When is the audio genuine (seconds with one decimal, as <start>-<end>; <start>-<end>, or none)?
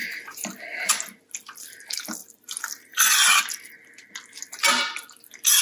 0.9-2.2; 3.1-5.6